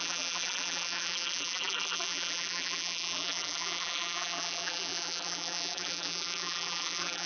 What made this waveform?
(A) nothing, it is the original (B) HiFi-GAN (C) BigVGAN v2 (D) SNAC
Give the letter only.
C